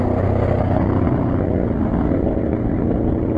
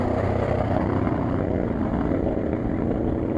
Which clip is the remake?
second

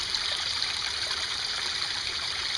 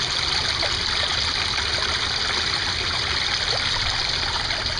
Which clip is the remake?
first